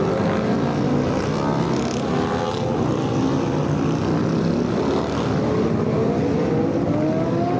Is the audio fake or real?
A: real